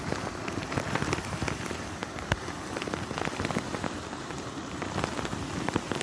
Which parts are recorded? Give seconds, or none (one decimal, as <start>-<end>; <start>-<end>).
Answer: 0.0-6.0

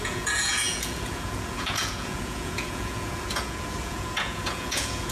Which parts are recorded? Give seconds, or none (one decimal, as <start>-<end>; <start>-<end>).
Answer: none

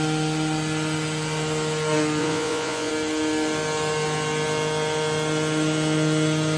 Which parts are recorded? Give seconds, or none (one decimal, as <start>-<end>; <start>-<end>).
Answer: 0.0-2.2; 2.9-6.6

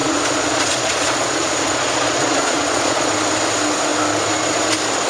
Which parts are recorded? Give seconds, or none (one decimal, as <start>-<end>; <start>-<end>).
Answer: 3.1-5.1

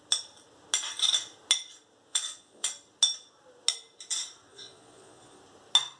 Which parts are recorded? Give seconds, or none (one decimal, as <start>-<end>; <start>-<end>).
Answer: 0.0-2.1; 2.7-4.5; 5.4-6.0

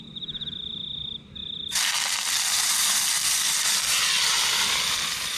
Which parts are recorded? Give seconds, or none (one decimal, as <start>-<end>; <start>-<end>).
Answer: 0.0-5.4

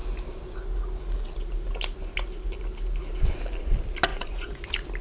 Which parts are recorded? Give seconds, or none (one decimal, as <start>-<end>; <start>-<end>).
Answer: 0.0-4.1; 4.6-5.0

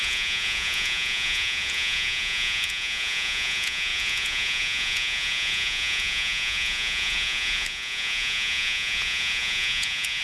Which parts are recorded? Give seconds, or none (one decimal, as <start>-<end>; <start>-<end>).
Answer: none